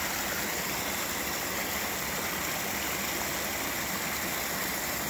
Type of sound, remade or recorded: recorded